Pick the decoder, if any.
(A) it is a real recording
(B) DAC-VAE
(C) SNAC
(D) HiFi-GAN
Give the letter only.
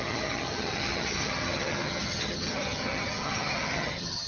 D